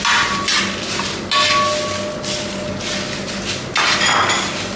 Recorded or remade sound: recorded